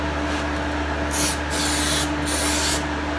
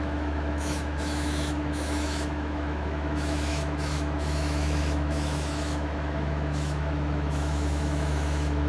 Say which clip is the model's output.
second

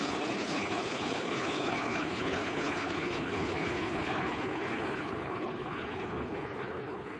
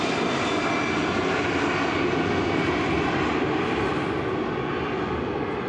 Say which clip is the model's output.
first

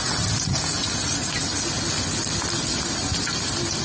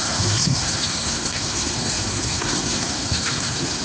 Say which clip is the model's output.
second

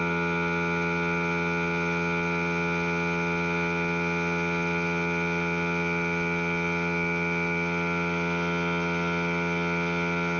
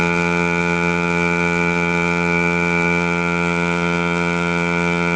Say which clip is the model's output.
second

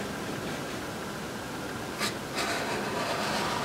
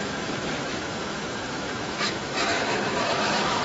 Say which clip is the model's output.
second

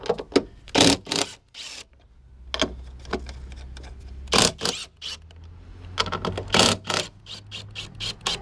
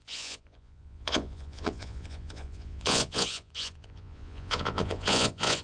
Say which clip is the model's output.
second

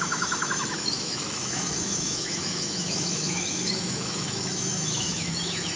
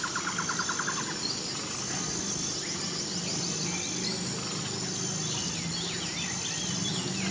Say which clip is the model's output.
first